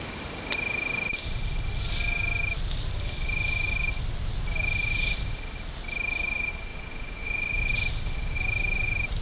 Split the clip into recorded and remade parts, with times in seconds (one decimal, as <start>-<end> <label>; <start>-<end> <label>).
0.0-6.7 recorded; 6.7-7.7 remade; 7.7-9.2 recorded